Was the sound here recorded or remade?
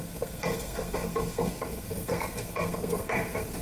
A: remade